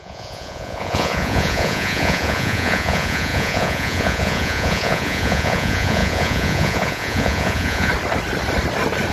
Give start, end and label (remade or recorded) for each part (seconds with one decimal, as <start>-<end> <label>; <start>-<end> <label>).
0.0-7.9 remade; 7.9-9.1 recorded